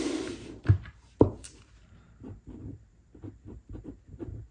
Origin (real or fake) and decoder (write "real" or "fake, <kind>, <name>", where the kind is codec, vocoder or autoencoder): fake, vocoder, BigVGAN v2